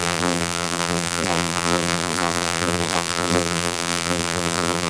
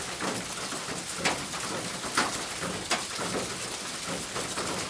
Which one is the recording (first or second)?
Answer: second